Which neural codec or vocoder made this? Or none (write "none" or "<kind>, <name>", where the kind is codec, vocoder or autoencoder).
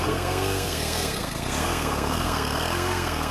codec, SNAC